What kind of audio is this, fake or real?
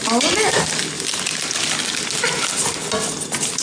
real